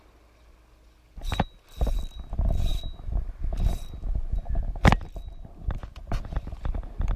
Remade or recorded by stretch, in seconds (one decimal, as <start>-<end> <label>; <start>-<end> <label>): 0.0-7.2 recorded